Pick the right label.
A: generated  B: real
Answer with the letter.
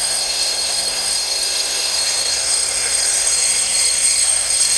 A